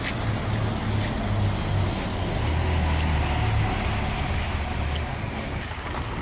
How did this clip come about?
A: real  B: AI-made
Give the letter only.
A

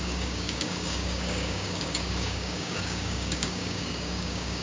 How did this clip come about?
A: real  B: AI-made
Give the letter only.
B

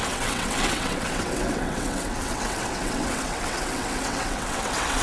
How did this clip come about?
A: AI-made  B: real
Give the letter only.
A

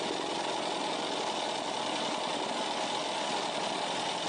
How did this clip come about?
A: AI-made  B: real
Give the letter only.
B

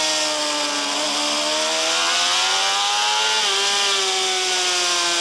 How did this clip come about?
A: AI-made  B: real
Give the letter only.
B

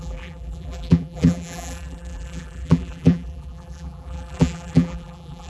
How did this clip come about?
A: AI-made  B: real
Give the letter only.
A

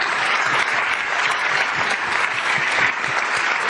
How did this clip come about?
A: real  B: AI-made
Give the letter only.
B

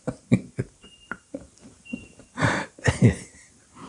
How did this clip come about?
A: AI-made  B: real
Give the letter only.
A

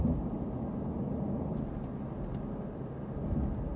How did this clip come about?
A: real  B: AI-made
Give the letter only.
A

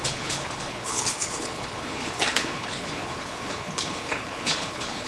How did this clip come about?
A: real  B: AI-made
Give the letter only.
B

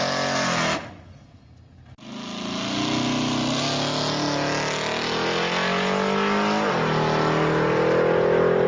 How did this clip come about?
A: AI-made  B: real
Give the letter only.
B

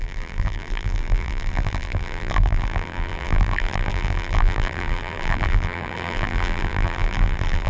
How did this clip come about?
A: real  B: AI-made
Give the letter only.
B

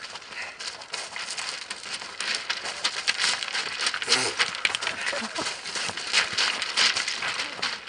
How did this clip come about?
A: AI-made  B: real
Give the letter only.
B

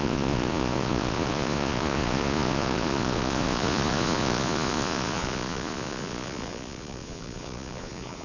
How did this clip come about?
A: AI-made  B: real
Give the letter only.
A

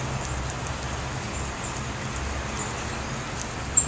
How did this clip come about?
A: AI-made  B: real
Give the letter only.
B